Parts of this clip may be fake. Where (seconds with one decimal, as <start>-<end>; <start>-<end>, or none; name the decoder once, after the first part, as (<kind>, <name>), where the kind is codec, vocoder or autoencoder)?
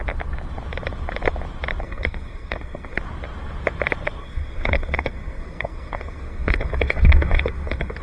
1.8-3.0 (codec, SNAC); 4.2-8.0